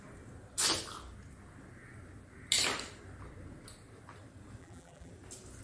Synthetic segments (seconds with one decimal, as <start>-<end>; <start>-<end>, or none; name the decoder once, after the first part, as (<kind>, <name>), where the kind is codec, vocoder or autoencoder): 4.6-5.1 (vocoder, BigVGAN v2)